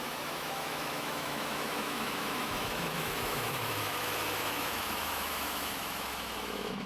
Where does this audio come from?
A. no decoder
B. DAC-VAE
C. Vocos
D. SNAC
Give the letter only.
B